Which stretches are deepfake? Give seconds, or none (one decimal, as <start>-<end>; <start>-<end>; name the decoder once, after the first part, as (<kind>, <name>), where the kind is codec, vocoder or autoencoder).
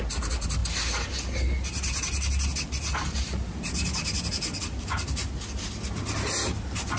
none